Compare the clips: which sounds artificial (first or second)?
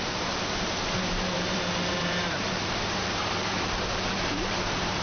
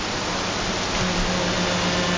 first